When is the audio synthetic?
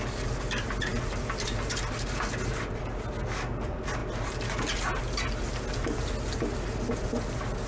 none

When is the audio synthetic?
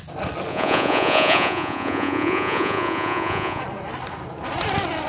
0.5-3.6 (vocoder, Vocos)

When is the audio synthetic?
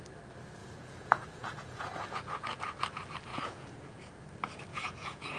0.6-2.2 (vocoder, Vocos); 3.3-4.1; 4.7-5.4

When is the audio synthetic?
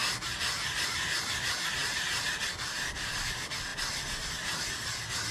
none